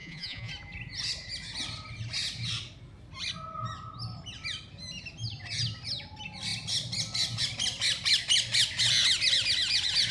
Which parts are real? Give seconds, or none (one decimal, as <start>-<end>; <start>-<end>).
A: 0.5-10.1